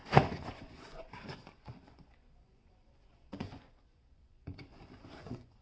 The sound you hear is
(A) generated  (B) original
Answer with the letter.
A